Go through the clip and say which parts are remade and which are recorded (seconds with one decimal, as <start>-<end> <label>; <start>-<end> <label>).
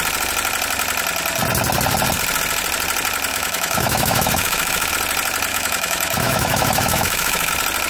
0.0-3.3 recorded; 3.3-4.9 remade; 4.9-5.5 recorded; 5.5-7.5 remade; 7.5-7.9 recorded